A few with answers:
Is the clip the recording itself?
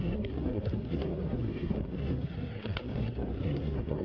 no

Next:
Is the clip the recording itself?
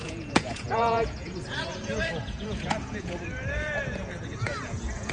no